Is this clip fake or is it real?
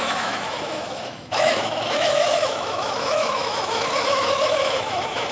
fake